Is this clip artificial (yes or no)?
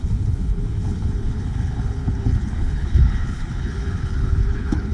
yes